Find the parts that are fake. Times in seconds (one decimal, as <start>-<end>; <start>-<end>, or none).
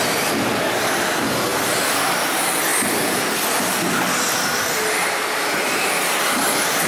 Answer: 1.5-2.1; 2.7-3.2